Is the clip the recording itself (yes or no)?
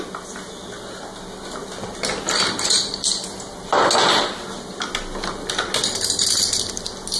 yes